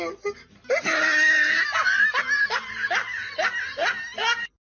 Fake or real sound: real